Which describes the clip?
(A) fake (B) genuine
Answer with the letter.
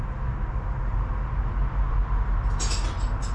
B